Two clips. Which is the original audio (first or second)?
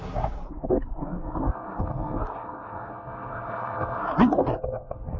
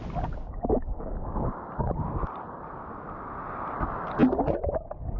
second